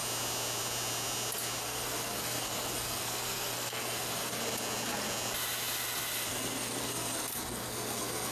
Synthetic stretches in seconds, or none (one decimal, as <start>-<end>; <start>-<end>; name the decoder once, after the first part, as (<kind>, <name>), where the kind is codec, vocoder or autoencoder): 1.6-4.4 (codec, SNAC); 6.3-8.3